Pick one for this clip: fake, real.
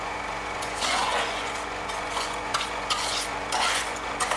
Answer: fake